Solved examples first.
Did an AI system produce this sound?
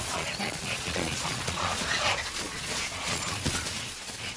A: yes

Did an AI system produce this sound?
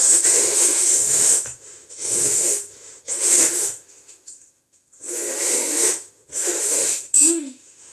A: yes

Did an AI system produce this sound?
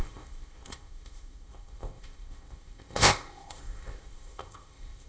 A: yes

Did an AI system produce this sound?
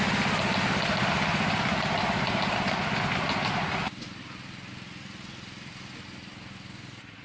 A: no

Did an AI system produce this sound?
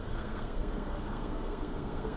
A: yes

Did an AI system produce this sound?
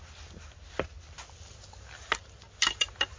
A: no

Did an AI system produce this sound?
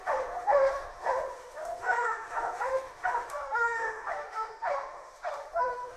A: yes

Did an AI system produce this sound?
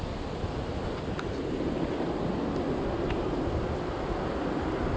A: no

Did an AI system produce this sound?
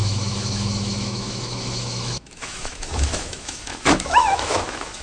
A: yes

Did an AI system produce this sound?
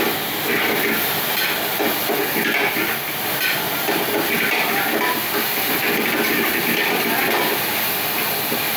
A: no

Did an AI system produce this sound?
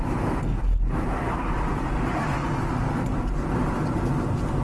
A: no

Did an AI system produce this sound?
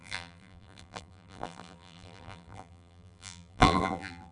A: yes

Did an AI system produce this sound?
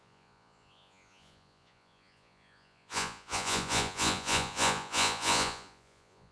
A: yes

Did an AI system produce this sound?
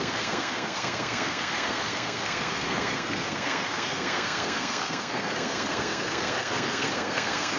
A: yes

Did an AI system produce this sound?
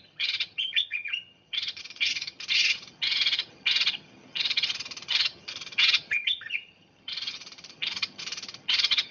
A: yes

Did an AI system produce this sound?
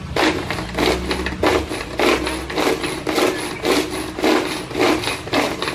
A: no